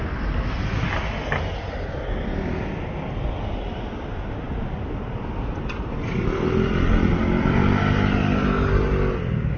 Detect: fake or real real